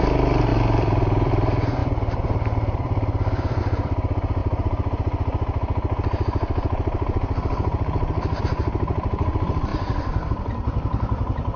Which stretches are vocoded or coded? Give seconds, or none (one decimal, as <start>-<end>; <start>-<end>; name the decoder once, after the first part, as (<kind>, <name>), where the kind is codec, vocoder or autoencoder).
0.0-4.4 (vocoder, BigVGAN v2); 8.4-11.6